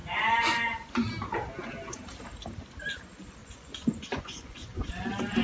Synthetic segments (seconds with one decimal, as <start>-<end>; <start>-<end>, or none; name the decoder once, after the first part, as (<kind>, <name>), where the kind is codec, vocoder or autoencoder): 0.0-1.1 (vocoder, Vocos); 3.4-4.9